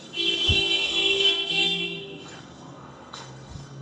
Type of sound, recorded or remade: remade